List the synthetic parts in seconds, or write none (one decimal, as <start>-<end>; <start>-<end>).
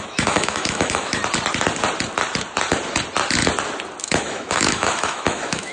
0.0-1.2; 4.0-5.7